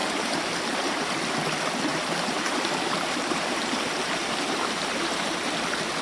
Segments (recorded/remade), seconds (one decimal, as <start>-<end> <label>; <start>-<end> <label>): 0.0-1.1 remade; 1.1-1.9 recorded; 1.9-5.5 remade; 5.5-6.0 recorded